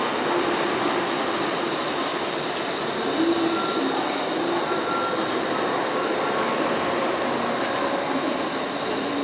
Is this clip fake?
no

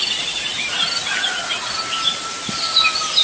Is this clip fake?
no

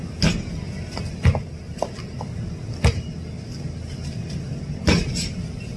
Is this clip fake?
no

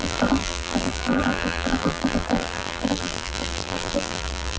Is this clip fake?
yes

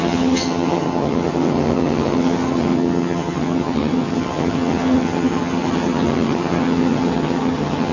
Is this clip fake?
yes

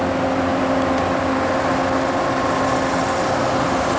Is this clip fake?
no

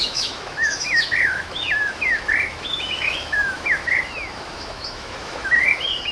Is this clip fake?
yes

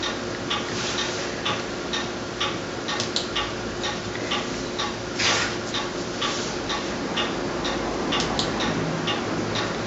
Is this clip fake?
no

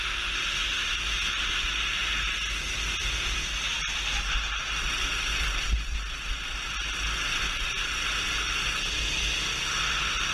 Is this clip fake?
no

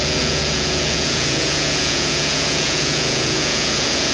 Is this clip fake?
yes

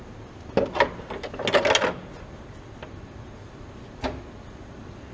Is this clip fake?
no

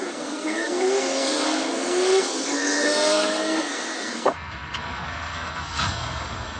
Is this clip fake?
yes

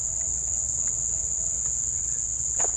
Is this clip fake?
yes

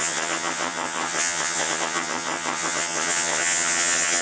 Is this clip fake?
yes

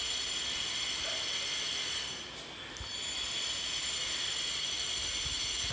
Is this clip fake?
no